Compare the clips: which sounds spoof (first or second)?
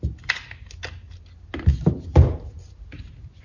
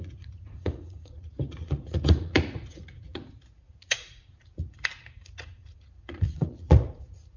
second